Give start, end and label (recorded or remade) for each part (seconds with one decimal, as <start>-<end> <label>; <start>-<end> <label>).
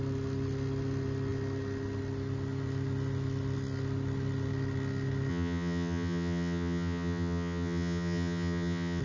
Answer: 0.0-5.3 recorded; 5.3-9.0 remade